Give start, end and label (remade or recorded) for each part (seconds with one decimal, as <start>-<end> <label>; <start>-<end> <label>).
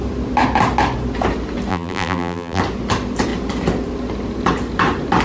0.0-1.7 recorded; 1.7-2.6 remade; 2.6-5.2 recorded